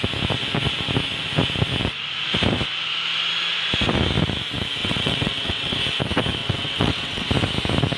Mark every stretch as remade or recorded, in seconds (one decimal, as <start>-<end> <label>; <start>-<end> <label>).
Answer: 0.0-4.8 recorded; 4.8-5.8 remade; 5.8-6.4 recorded; 6.4-7.3 remade; 7.3-8.0 recorded